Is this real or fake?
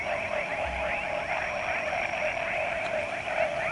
real